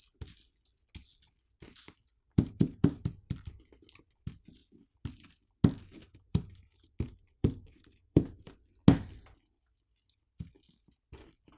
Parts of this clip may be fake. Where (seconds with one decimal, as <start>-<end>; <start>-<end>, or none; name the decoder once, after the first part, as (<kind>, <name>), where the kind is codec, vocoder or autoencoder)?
1.8-3.0 (vocoder, BigVGAN v2); 6.3-8.5